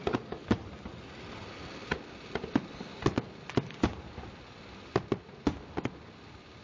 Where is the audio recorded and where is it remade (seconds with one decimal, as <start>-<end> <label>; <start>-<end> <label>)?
0.0-0.4 recorded; 0.4-0.9 remade; 0.9-6.6 recorded